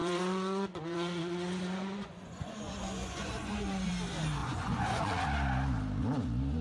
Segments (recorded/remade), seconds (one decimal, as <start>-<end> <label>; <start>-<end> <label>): 0.0-3.9 remade; 3.9-4.4 recorded; 4.4-5.2 remade; 5.2-6.6 recorded

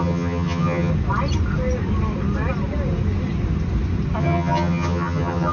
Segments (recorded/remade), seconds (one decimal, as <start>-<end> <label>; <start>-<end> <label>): 0.0-0.9 remade; 0.9-4.2 recorded; 4.2-5.5 remade

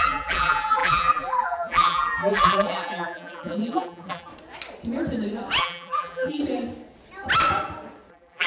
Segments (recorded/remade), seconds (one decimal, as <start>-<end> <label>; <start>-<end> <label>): 0.0-4.3 remade; 4.3-5.6 recorded; 5.6-6.4 remade; 6.4-8.1 recorded; 8.1-8.5 remade

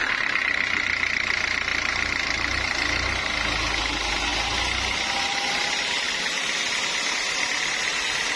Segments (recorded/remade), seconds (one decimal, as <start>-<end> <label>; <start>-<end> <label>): 0.0-8.4 recorded

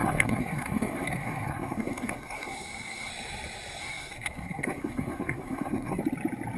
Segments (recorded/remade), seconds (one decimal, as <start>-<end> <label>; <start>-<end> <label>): 0.0-3.1 remade; 3.1-3.8 recorded; 3.8-6.0 remade; 6.0-6.6 recorded

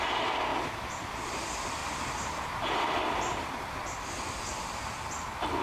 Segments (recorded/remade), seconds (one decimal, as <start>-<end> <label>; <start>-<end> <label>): 0.0-0.5 recorded; 0.5-1.4 remade; 1.4-1.8 recorded; 1.8-4.2 remade; 4.2-5.6 recorded

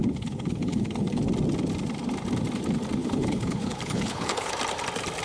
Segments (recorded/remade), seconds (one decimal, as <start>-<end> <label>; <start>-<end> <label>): 0.0-1.2 remade; 1.2-3.0 recorded; 3.0-4.5 remade; 4.5-5.2 recorded

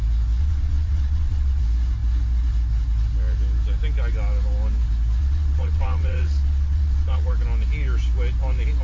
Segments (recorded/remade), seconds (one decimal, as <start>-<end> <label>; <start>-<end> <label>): 0.0-0.4 recorded; 0.4-1.6 remade; 1.6-5.2 recorded; 5.2-7.3 remade; 7.3-8.8 recorded